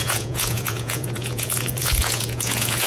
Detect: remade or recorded remade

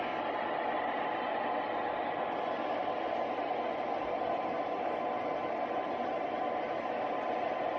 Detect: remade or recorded recorded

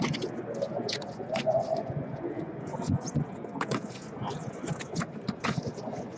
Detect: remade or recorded remade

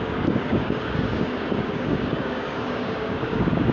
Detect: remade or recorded remade